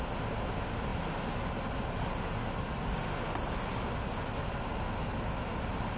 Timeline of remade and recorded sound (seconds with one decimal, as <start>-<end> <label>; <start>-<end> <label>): 0.0-6.0 recorded